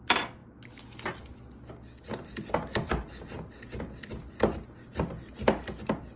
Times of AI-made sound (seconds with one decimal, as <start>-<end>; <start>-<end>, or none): none